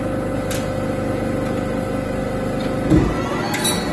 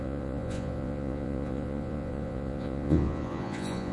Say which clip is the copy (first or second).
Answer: second